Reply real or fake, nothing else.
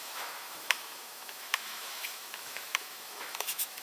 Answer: fake